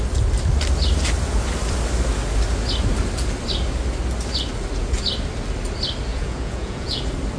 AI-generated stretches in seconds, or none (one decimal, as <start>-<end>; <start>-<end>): 6.1-7.0